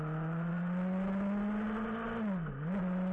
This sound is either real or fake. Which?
real